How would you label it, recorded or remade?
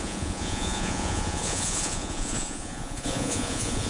remade